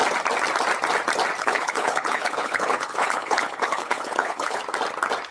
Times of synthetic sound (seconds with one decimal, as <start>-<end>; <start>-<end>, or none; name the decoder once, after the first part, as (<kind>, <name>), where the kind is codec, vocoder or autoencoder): 1.4-4.6 (codec, HILCodec)